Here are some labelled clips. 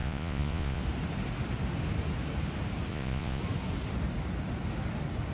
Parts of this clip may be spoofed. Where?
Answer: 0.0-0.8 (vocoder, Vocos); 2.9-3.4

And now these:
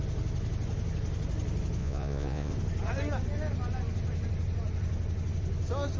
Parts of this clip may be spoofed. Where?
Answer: 1.8-2.5 (vocoder, Vocos)

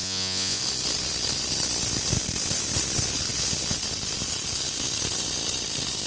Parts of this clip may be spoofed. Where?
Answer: 0.0-0.6 (vocoder, Vocos)

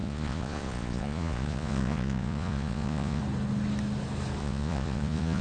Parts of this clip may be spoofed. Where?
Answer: 0.0-3.2 (vocoder, Vocos); 4.4-5.4

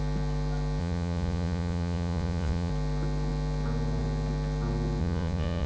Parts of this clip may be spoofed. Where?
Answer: 0.8-2.7 (vocoder, Vocos); 5.0-5.7

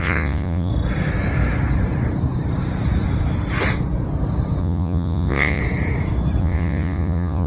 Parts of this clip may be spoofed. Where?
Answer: 0.0-0.7 (vocoder, Vocos); 4.6-5.6; 6.4-7.5

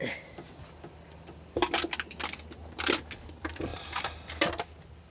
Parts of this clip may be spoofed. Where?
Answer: none

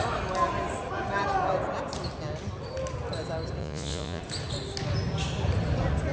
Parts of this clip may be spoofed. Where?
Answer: 3.6-4.2 (vocoder, Vocos)